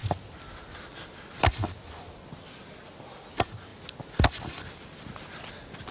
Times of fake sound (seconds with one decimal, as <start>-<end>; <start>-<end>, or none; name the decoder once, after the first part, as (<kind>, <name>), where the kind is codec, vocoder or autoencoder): none